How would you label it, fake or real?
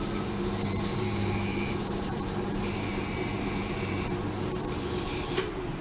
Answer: fake